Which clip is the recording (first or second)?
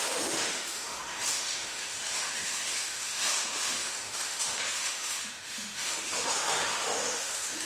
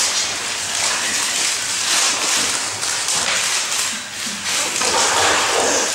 second